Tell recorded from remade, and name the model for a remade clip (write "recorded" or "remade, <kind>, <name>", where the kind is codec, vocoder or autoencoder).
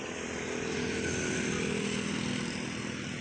recorded